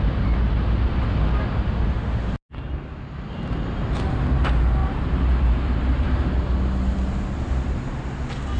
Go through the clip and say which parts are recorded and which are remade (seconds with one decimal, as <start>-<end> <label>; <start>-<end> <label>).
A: 0.0-4.8 recorded; 4.8-6.2 remade; 6.2-8.6 recorded